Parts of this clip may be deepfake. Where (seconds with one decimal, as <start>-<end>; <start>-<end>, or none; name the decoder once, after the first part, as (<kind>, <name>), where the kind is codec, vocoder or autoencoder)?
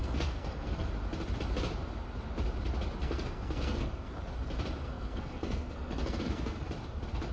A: 0.0-0.9 (codec, SNAC); 3.0-4.1; 4.8-6.7